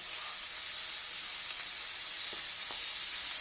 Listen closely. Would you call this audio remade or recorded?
recorded